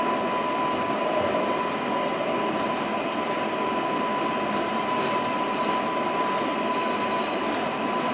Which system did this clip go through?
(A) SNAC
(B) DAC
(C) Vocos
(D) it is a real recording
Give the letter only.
D